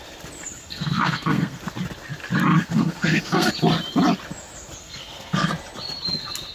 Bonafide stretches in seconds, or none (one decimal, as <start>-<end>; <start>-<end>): 0.0-0.6; 1.6-2.5; 3.5-4.8; 5.5-6.5